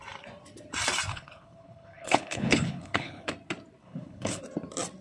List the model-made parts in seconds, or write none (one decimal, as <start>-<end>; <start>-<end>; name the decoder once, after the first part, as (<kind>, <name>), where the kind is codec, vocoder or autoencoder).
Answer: 1.1-3.3 (codec, HILCodec); 3.8-4.4